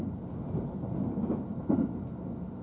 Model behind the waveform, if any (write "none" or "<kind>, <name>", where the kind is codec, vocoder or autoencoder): none